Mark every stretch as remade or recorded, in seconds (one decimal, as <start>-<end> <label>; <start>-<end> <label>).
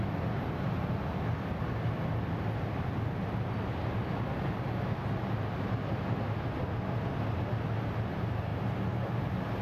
0.0-8.5 recorded; 8.5-9.2 remade; 9.2-9.6 recorded